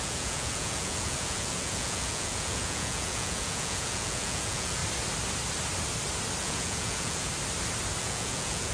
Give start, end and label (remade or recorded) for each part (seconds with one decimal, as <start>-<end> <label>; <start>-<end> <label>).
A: 0.0-4.8 remade; 4.8-6.4 recorded; 6.4-7.3 remade; 7.3-8.0 recorded; 8.0-8.7 remade